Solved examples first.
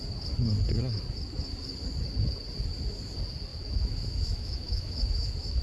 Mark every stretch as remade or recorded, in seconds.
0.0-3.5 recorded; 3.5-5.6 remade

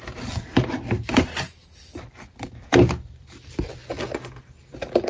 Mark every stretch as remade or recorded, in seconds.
0.0-3.8 remade; 3.8-4.5 recorded; 4.5-5.1 remade

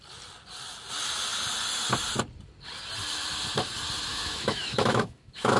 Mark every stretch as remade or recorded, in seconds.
0.0-4.1 recorded; 4.1-5.6 remade